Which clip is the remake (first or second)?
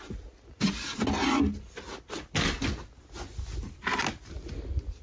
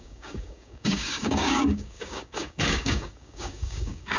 second